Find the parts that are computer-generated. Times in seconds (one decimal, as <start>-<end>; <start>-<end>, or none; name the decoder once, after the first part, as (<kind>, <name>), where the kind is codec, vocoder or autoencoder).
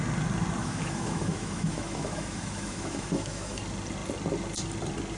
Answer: 0.6-3.6 (autoencoder, DAC-VAE)